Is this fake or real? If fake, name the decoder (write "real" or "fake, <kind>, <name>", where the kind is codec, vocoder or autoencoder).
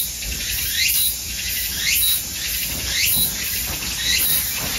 real